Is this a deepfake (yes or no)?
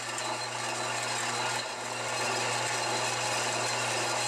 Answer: no